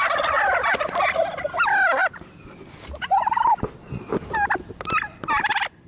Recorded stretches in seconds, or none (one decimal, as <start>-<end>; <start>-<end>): 0.0-5.9

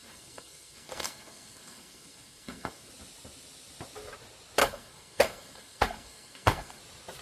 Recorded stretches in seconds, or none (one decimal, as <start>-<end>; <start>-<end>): 2.9-4.6; 6.8-7.2

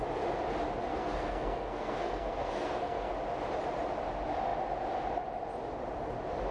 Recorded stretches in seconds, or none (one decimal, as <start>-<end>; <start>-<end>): 0.0-0.9; 3.1-6.5

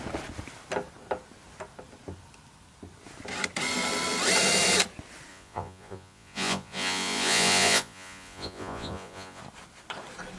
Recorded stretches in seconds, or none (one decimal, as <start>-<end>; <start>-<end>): 0.0-5.3; 9.4-10.4